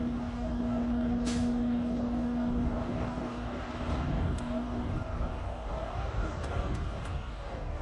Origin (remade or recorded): remade